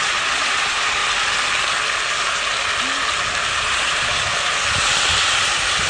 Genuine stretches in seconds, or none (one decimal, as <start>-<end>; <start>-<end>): 1.0-3.6; 4.3-5.9